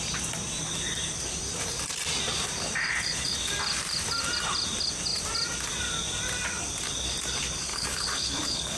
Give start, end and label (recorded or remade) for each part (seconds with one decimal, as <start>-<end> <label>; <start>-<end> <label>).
0.0-7.7 recorded; 7.7-8.8 remade

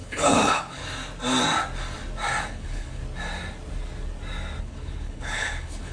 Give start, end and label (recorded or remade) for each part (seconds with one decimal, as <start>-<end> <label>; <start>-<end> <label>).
0.0-0.8 remade; 0.8-2.4 recorded; 2.4-3.0 remade; 3.0-4.6 recorded; 4.6-5.9 remade

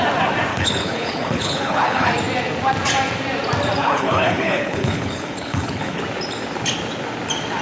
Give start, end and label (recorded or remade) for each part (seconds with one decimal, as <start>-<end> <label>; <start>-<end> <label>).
0.0-0.5 recorded; 0.5-2.1 remade; 2.1-3.8 recorded; 3.8-6.0 remade; 6.0-7.6 recorded